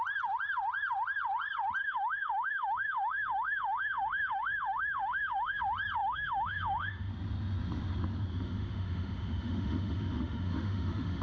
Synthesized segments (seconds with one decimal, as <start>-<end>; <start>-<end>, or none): 1.8-5.6; 6.0-7.1; 8.3-11.2